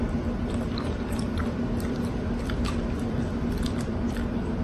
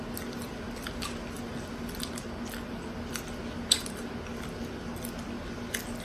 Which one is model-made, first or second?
first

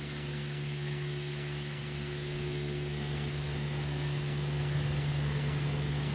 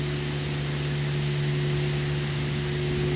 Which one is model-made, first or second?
first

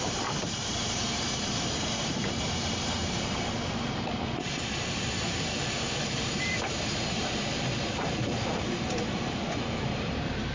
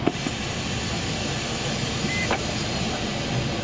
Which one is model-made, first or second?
first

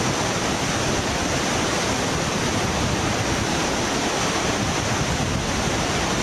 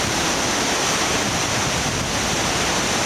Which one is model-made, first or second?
first